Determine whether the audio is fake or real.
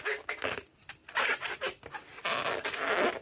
real